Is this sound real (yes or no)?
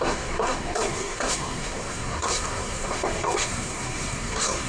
no